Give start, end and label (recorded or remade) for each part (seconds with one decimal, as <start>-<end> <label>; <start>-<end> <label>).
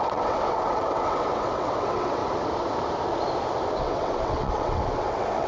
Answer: 0.0-2.2 remade; 2.2-3.8 recorded; 3.8-5.5 remade